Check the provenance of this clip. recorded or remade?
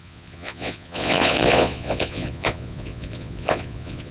remade